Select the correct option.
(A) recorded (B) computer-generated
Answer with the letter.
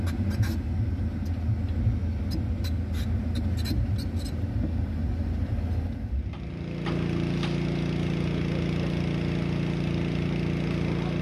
A